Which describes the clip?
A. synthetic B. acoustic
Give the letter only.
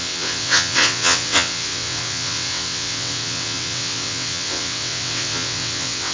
A